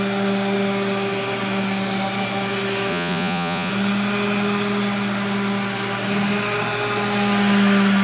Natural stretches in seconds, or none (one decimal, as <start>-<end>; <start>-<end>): 0.0-2.9; 3.7-8.0